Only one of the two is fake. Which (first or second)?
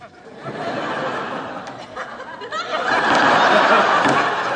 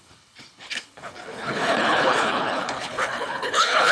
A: second